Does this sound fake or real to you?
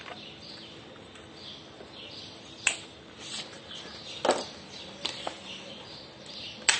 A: real